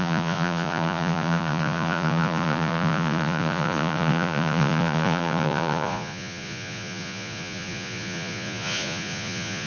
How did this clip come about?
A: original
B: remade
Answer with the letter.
B